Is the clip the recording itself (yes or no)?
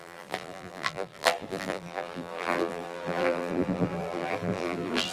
no